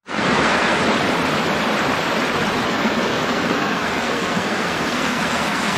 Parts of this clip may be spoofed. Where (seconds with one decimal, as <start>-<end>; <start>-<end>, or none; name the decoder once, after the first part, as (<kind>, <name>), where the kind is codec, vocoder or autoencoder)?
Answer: 0.0-0.8 (codec, SNAC); 2.7-5.8